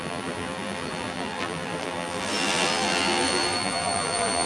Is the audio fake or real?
fake